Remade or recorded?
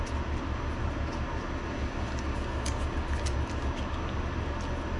recorded